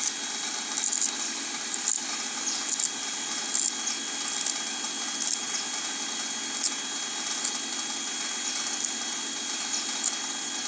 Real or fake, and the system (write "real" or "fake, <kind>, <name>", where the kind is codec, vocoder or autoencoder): real